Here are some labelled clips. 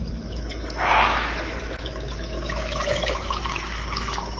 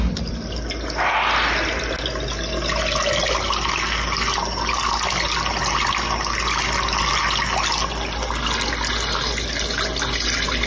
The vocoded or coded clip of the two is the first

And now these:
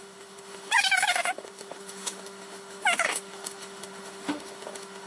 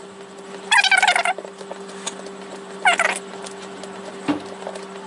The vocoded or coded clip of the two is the first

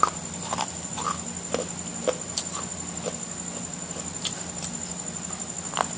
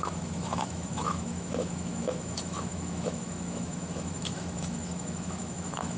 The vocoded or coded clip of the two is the second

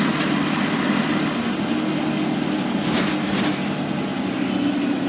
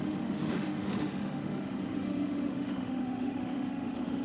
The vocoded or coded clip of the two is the second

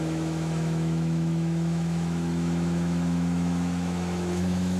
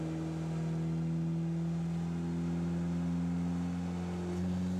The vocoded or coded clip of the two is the first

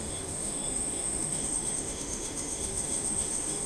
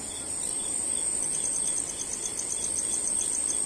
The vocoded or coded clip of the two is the first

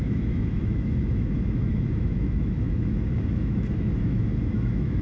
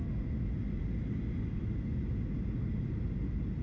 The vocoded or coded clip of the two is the first